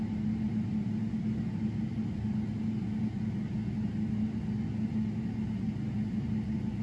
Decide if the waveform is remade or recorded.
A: recorded